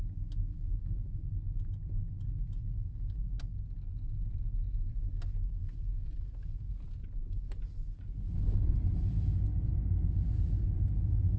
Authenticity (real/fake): real